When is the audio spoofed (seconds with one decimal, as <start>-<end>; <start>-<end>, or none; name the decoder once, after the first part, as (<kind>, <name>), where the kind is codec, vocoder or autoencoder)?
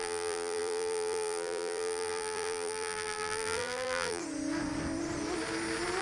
0.0-4.2 (vocoder, BigVGAN v2)